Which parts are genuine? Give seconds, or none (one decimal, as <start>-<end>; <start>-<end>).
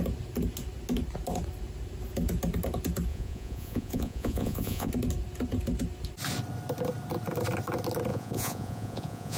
0.0-3.1; 4.9-8.1